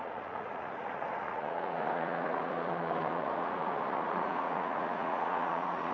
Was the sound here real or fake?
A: fake